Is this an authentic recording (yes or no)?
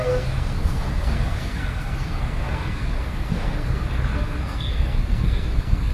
no